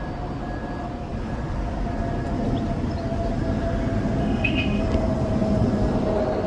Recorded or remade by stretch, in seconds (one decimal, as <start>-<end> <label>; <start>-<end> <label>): 0.0-4.2 recorded; 4.2-4.8 remade; 4.8-6.5 recorded